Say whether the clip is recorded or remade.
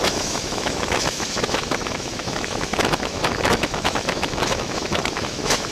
remade